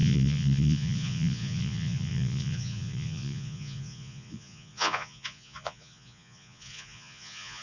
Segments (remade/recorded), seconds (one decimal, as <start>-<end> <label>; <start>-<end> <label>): 0.0-7.6 remade